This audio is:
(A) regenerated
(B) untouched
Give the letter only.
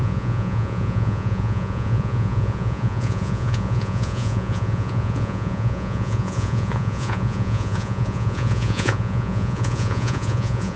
A